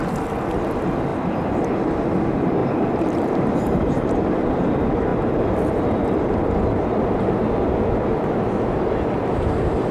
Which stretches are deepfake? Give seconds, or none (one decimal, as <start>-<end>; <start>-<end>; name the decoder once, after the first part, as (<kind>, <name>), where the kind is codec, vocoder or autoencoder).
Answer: 2.6-4.2 (vocoder, BigVGAN v2)